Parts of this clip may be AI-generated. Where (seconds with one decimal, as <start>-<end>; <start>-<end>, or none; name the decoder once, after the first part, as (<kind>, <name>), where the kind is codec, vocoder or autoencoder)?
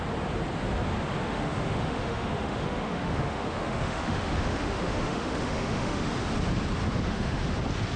1.3-6.1 (autoencoder, DAC-VAE); 7.1-7.6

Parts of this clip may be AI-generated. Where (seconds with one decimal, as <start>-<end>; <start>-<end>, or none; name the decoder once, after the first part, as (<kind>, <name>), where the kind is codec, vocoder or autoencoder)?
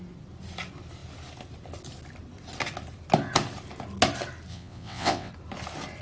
4.5-5.3 (vocoder, WaveNeXt)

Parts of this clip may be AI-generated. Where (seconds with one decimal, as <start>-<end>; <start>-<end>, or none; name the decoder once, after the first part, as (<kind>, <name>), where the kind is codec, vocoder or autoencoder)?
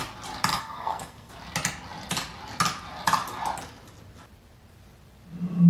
0.5-1.3 (codec, SNAC)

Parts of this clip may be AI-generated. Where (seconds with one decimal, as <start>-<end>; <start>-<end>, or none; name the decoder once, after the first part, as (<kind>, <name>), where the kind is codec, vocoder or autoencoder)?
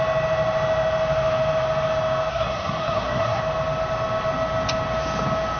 2.3-3.4 (codec, SNAC)